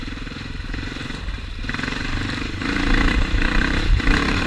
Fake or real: fake